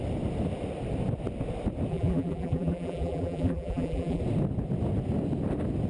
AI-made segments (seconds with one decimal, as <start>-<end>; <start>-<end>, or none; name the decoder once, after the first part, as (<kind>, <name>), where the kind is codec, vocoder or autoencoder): 1.9-4.2 (vocoder, BigVGAN v2)

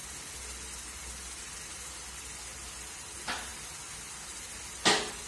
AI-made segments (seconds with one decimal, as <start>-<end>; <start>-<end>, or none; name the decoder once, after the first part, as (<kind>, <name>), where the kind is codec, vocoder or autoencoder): none